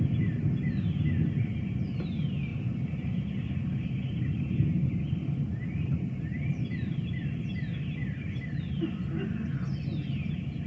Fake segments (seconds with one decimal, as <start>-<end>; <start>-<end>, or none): 8.0-8.6